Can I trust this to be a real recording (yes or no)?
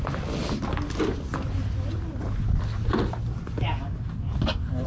yes